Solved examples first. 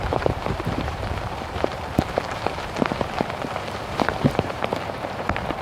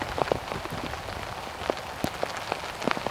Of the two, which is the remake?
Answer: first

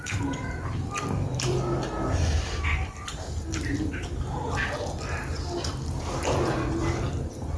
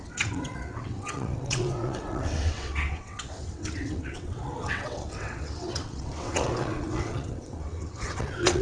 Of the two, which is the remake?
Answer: second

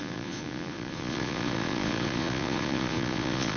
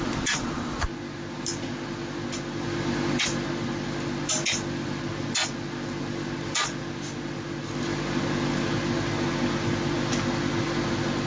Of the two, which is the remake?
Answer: first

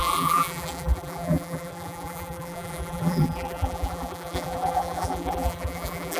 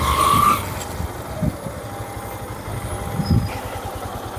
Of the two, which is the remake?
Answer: first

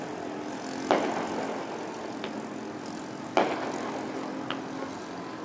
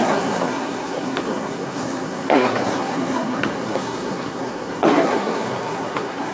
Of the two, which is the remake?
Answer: second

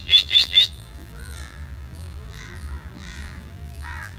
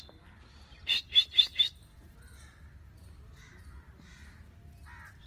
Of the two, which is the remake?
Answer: first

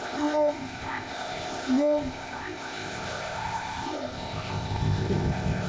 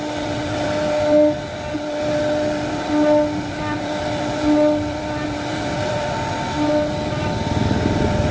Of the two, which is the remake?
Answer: first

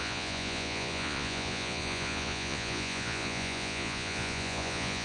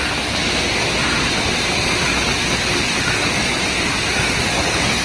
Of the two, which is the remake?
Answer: first